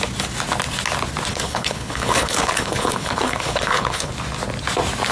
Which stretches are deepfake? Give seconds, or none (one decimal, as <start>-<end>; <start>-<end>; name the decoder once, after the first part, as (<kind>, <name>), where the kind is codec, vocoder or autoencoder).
1.3-4.1 (codec, HILCodec)